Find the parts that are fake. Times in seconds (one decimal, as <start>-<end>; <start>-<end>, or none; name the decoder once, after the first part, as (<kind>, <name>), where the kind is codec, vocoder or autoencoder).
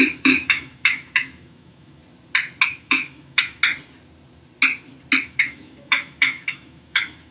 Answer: 0.0-2.0 (autoencoder, DAC-VAE); 2.7-3.6; 5.2-7.3